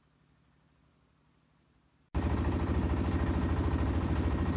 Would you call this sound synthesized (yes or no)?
no